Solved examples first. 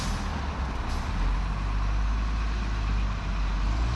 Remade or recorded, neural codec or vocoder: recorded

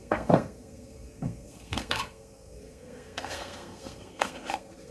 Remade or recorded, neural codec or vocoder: remade, codec, SNAC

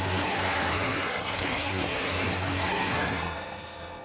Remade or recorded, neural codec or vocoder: remade, codec, SNAC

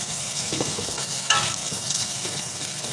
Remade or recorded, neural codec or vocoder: remade, codec, SNAC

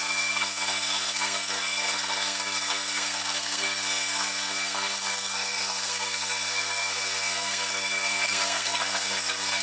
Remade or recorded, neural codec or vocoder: remade, codec, SNAC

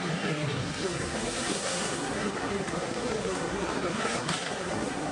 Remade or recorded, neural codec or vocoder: remade, codec, SNAC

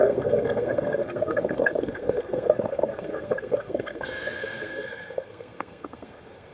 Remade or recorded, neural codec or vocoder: remade, codec, SNAC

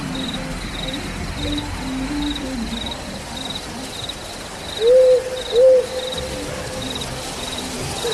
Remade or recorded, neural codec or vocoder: recorded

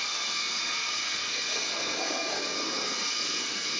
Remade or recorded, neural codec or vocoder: remade, codec, SNAC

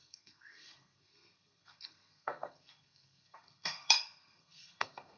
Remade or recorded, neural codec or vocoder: remade, codec, SNAC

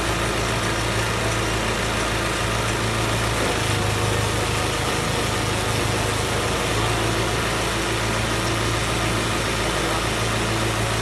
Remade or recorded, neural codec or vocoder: recorded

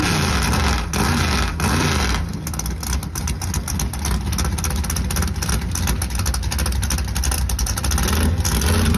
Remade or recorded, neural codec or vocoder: recorded